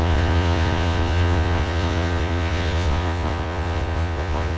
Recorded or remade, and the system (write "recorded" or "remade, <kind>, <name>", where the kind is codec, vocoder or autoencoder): remade, vocoder, Vocos